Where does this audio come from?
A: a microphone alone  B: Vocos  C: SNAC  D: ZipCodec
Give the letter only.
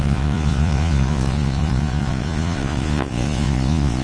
B